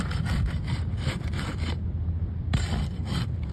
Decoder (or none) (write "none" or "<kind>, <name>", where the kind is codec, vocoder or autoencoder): none